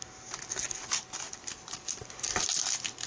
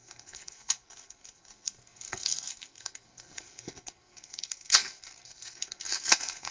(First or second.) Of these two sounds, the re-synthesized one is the second